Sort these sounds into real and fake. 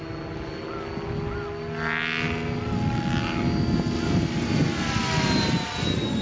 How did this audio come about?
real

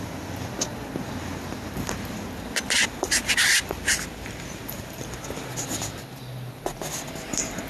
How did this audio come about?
real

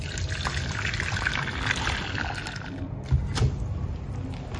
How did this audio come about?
real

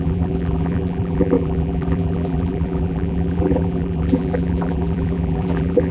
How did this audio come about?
fake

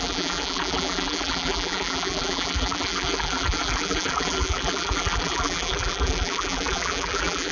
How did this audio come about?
fake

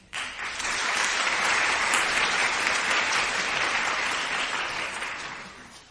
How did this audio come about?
fake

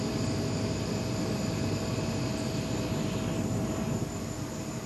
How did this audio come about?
fake